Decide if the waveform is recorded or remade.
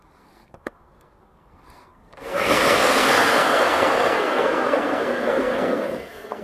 remade